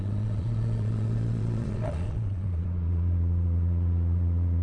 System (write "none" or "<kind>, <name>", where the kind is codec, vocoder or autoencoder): vocoder, Vocos